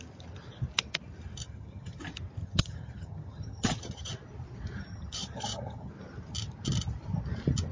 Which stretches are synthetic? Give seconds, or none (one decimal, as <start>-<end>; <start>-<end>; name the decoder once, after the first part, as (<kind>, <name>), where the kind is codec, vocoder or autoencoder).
1.4-2.0 (vocoder, HiFi-GAN); 2.4-4.1; 4.9-5.9